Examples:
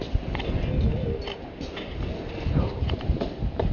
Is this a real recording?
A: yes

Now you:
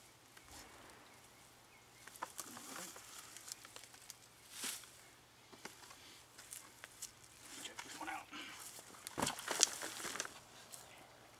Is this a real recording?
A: yes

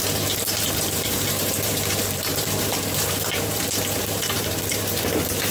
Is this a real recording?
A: no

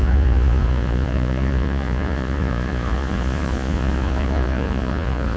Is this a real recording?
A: no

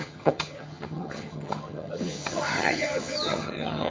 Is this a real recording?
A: no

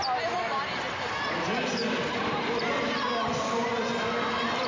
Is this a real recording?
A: yes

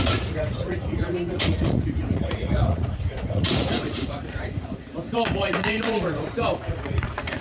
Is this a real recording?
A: no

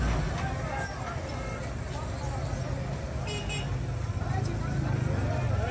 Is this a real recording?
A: yes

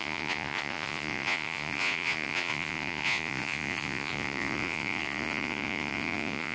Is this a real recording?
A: no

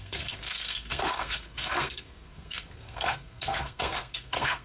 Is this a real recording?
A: no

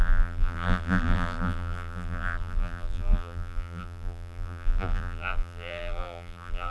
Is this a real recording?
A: no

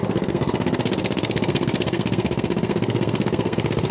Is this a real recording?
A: no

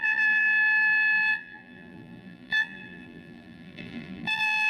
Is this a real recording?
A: no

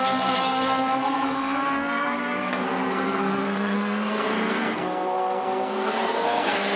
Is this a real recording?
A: no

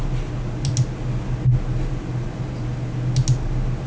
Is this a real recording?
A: yes